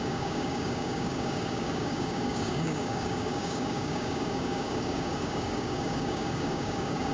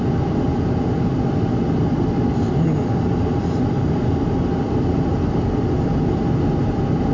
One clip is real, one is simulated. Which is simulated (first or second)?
first